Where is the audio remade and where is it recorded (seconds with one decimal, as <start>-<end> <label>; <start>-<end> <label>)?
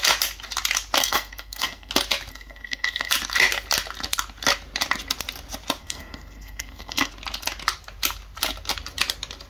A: 0.0-1.0 recorded; 1.0-1.9 remade; 1.9-2.3 recorded; 2.3-3.1 remade; 3.1-5.8 recorded; 5.8-7.1 remade; 7.1-9.5 recorded